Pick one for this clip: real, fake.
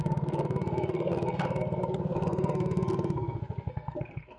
fake